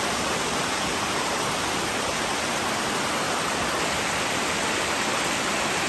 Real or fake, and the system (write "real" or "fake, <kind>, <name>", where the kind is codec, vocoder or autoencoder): real